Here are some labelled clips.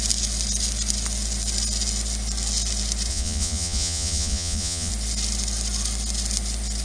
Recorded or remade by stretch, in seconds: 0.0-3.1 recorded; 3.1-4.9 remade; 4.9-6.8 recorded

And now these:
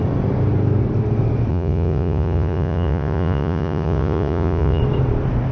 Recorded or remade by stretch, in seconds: 0.0-1.5 recorded; 1.5-4.8 remade; 4.8-5.5 recorded

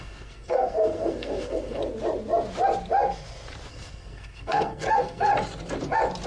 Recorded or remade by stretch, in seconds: 0.0-1.8 remade; 1.8-3.7 recorded; 3.7-5.3 remade; 5.3-6.3 recorded